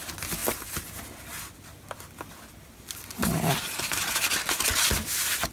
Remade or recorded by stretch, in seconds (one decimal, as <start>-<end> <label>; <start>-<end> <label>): 0.0-3.2 recorded; 3.2-4.4 remade; 4.4-5.5 recorded